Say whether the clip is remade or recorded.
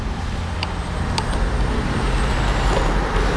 recorded